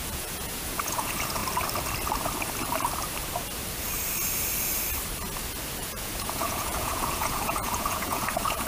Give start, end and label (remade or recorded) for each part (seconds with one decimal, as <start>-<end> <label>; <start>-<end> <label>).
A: 0.0-1.4 remade; 1.4-5.8 recorded; 5.8-8.7 remade